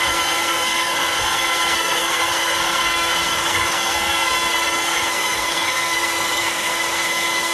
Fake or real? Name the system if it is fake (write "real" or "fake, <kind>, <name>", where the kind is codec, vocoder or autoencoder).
fake, codec, SNAC